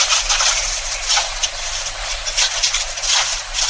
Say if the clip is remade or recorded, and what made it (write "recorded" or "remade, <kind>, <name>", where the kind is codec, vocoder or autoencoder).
recorded